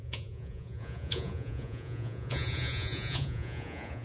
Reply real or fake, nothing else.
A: fake